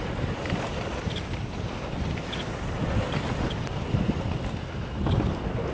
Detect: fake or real real